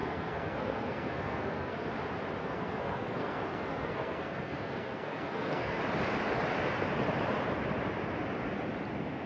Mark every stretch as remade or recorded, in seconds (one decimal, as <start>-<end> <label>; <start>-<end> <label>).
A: 0.0-1.9 remade; 1.9-2.4 recorded; 2.4-5.8 remade; 5.8-9.3 recorded